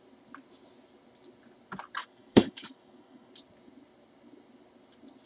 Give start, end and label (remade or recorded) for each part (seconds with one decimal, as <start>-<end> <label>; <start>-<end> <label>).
0.0-2.0 recorded; 2.0-3.3 remade; 3.3-5.3 recorded

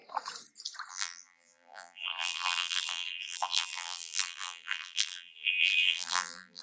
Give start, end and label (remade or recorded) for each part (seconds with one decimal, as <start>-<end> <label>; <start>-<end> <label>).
0.0-0.9 recorded; 0.9-6.6 remade

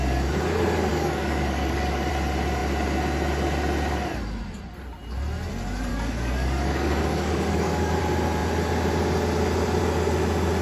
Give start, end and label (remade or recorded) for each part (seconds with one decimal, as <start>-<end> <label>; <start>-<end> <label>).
0.0-0.9 recorded; 0.9-2.1 remade; 2.1-5.9 recorded; 5.9-8.0 remade; 8.0-10.6 recorded

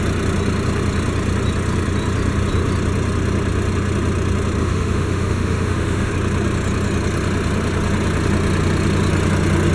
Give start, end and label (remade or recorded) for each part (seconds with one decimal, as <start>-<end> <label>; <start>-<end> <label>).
0.0-4.6 recorded; 4.6-6.1 remade; 6.1-9.7 recorded

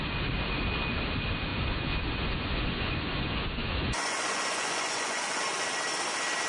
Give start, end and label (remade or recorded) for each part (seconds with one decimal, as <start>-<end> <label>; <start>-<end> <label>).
0.0-1.5 recorded; 1.5-5.4 remade; 5.4-6.5 recorded

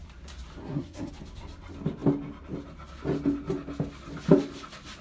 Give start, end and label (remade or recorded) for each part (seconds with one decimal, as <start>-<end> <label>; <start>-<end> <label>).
0.0-0.6 recorded; 0.6-1.1 remade; 1.1-5.0 recorded

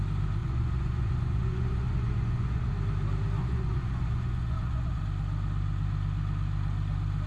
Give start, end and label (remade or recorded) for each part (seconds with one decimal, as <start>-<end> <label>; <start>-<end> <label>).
0.0-0.4 recorded; 0.4-2.7 remade; 2.7-3.4 recorded; 3.4-5.0 remade; 5.0-7.3 recorded

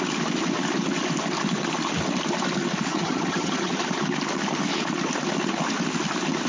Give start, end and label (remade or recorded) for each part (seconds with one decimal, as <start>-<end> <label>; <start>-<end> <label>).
0.0-2.9 recorded; 2.9-3.7 remade; 3.7-6.5 recorded